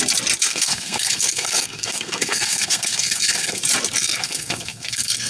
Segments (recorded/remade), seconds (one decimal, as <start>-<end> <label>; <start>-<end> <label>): 0.0-0.4 recorded; 0.4-3.6 remade; 3.6-4.0 recorded; 4.0-5.3 remade